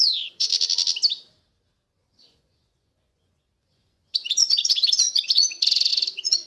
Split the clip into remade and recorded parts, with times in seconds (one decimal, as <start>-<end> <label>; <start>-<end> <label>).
0.0-0.5 remade; 0.5-1.9 recorded; 1.9-6.5 remade